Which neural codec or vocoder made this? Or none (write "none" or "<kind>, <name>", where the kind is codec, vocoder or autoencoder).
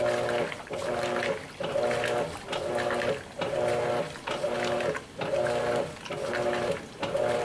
none